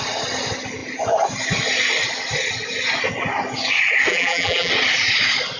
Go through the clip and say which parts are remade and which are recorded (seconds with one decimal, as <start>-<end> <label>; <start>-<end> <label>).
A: 0.0-4.1 recorded; 4.1-4.7 remade; 4.7-5.6 recorded